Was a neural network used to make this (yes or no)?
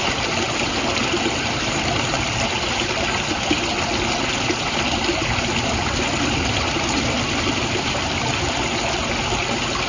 no